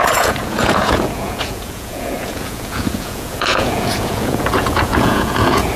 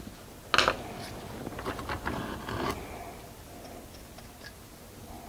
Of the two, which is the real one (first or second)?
second